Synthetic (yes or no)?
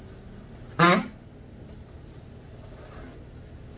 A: no